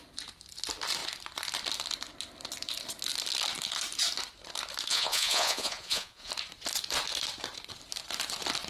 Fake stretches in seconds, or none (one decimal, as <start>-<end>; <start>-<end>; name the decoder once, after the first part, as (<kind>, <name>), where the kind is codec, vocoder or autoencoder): 4.9-6.3 (vocoder, Vocos)